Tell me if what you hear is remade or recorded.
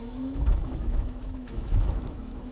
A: remade